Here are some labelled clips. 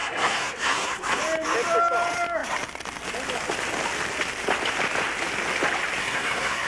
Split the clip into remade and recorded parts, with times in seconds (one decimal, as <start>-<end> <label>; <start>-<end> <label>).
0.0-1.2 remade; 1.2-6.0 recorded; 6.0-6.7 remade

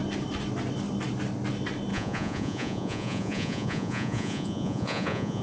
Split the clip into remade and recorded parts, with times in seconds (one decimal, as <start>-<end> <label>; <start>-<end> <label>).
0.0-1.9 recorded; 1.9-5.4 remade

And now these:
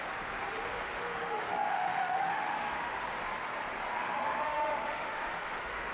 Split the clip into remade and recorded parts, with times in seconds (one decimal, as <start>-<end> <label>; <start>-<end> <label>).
0.0-0.7 recorded; 0.7-3.1 remade; 3.1-4.0 recorded; 4.0-5.9 remade